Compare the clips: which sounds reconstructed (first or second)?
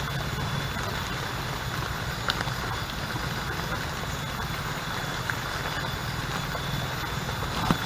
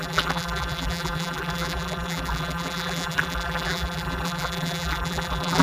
second